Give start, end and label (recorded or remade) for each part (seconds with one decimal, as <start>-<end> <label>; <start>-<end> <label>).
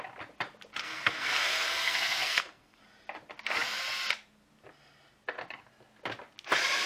0.0-0.8 recorded; 0.8-2.8 remade; 2.8-6.9 recorded